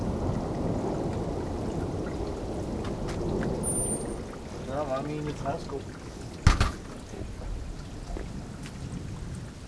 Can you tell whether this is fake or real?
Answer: real